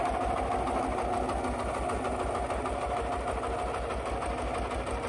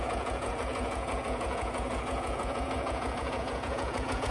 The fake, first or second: second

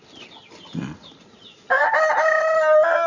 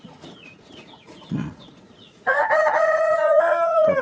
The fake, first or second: second